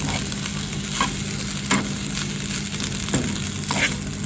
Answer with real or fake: real